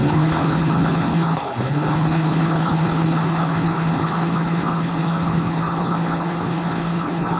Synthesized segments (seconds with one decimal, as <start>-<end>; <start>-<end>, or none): 0.0-7.4